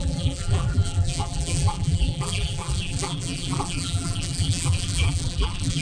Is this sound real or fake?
fake